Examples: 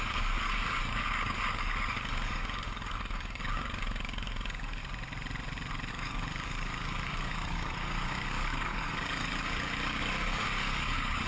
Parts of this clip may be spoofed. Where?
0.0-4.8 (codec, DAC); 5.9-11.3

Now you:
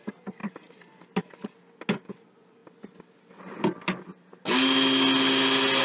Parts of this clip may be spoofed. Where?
none

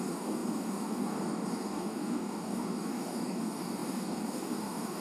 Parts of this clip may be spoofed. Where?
0.0-5.0 (codec, DAC)

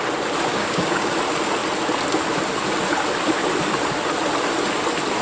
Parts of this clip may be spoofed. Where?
0.5-1.1 (codec, DAC)

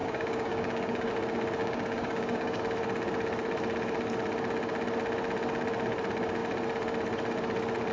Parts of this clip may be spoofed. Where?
0.0-1.1 (codec, DAC); 1.6-2.6

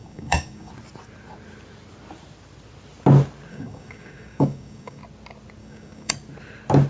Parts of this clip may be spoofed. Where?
0.0-0.7 (codec, DAC); 3.5-5.0; 5.6-6.1

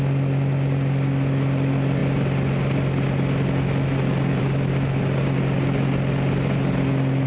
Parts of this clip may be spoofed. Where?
none